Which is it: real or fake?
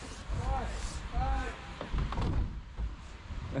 real